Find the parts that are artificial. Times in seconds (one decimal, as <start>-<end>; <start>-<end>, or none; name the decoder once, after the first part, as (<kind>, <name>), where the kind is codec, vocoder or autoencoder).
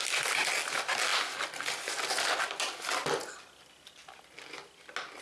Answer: none